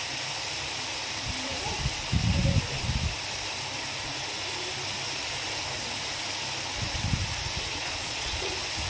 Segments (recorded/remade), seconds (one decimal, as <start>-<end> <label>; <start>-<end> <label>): 0.0-7.8 recorded; 7.8-8.5 remade; 8.5-8.9 recorded